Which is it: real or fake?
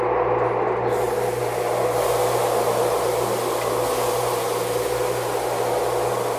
real